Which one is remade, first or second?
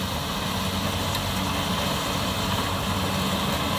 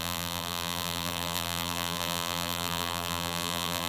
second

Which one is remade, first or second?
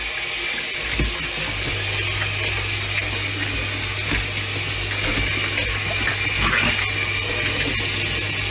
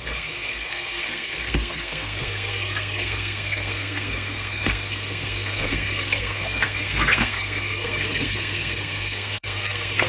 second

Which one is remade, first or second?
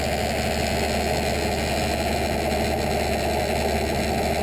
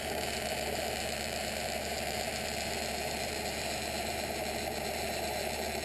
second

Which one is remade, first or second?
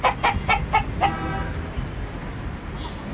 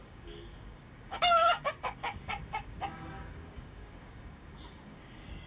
second